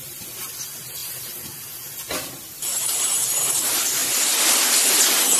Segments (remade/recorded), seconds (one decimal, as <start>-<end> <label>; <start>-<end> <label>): 0.0-5.4 recorded